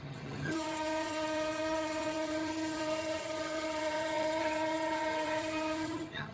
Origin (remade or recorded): remade